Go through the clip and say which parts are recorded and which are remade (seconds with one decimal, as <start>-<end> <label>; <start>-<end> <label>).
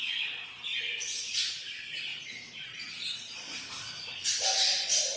0.0-0.7 remade; 0.7-1.5 recorded; 1.5-3.5 remade; 3.5-4.6 recorded; 4.6-5.2 remade